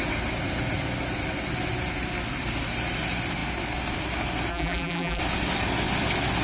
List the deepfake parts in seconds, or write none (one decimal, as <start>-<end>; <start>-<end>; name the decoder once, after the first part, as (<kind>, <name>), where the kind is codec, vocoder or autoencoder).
4.5-5.2 (vocoder, BigVGAN v2)